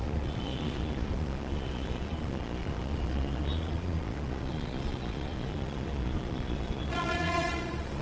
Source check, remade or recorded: remade